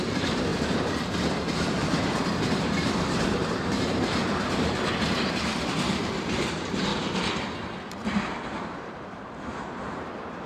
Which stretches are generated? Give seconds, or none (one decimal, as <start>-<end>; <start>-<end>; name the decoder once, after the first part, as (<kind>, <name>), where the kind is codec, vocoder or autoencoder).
0.0-0.5 (vocoder, BigVGAN v2); 3.1-4.2; 5.7-6.9; 8.0-10.5